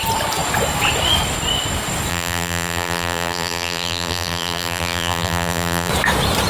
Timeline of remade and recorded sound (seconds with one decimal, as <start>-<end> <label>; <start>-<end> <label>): 0.0-2.1 recorded; 2.1-5.9 remade; 5.9-6.5 recorded